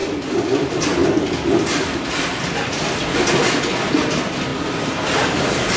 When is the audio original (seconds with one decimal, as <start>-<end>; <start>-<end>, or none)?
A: 2.7-4.5